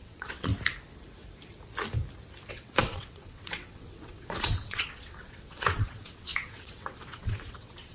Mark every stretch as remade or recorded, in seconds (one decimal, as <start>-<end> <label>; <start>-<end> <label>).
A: 0.0-0.5 remade; 0.5-2.5 recorded; 2.5-7.9 remade